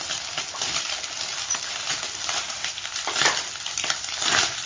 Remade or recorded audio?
remade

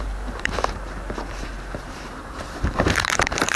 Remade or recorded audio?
remade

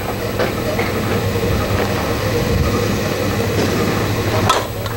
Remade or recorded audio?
recorded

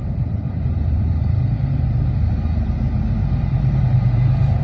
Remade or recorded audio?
remade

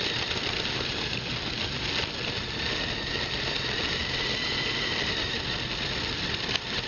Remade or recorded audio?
recorded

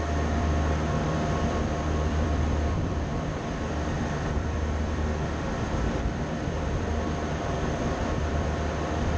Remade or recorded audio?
remade